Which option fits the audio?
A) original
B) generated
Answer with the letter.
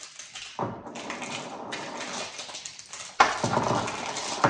A